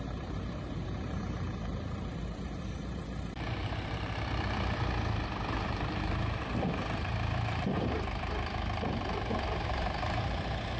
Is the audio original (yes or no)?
no